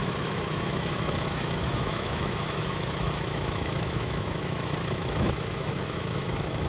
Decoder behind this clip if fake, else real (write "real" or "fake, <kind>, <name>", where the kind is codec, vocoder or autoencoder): fake, autoencoder, DAC-VAE